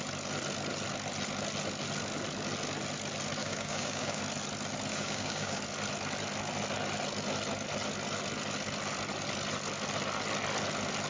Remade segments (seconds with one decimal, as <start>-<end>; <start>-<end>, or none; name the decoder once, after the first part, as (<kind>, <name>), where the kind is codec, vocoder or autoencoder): 3.4-4.2 (codec, DAC); 4.9-5.6